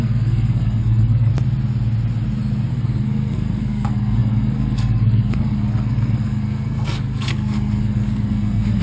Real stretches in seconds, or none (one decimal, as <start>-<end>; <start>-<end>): 1.3-2.7